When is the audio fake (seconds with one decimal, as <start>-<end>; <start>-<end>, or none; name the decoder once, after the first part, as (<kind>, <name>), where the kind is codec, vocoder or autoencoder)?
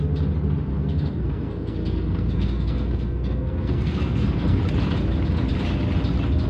0.7-4.6 (codec, SNAC)